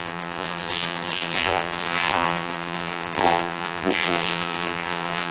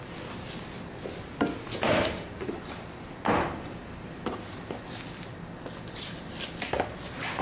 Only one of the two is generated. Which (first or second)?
first